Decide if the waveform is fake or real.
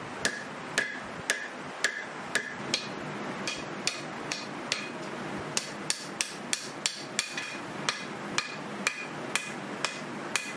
real